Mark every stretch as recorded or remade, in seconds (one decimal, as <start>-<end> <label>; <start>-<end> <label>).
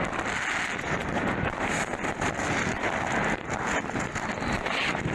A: 0.0-5.1 recorded